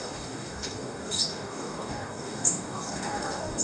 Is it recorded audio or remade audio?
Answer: remade